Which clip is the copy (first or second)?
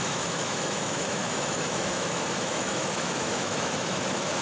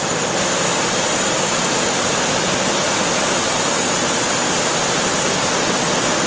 first